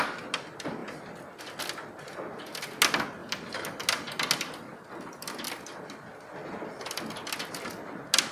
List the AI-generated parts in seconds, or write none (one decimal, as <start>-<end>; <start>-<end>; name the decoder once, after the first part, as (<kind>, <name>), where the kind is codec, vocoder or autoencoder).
none